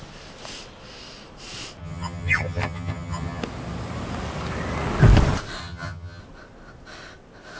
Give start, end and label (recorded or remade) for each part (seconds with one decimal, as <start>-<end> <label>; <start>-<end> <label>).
0.0-1.8 recorded; 1.8-3.4 remade; 3.4-5.6 recorded; 5.6-6.2 remade; 6.2-7.6 recorded